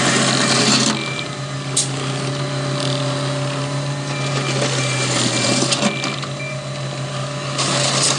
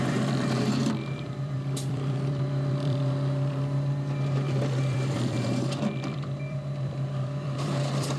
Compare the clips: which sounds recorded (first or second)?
first